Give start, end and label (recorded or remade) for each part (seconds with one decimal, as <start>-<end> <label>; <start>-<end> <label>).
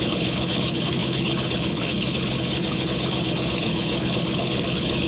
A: 0.0-5.1 remade